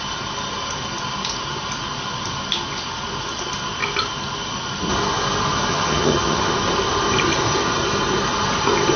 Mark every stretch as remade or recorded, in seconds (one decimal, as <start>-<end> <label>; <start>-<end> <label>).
0.0-5.7 recorded; 5.7-6.5 remade; 6.5-9.0 recorded